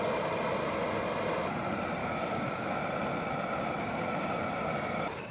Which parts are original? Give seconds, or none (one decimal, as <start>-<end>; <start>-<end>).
0.0-2.0; 2.7-5.3